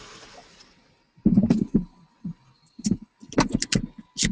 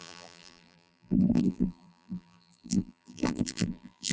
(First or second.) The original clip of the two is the first